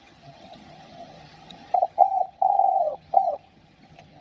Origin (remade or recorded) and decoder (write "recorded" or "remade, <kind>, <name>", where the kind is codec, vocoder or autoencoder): remade, vocoder, HiFi-GAN